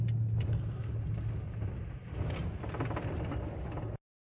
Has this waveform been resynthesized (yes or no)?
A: no